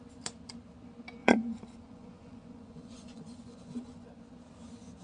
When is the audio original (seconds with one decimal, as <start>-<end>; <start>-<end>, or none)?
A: 0.0-1.2; 4.1-5.0

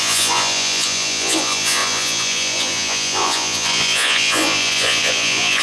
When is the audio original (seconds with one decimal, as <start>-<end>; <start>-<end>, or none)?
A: none